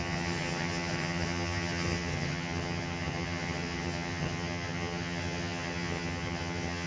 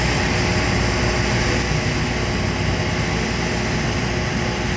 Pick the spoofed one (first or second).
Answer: first